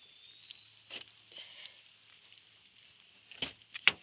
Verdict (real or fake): real